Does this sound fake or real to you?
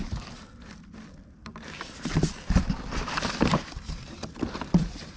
fake